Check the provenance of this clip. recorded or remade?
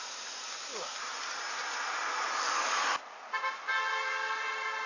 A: recorded